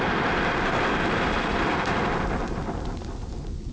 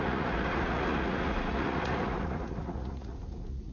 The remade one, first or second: second